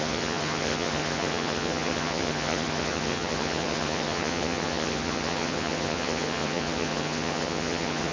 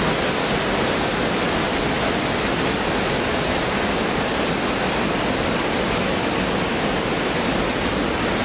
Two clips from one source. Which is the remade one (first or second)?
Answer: first